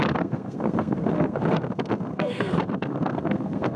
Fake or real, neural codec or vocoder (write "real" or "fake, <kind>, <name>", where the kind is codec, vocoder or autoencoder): fake, codec, SNAC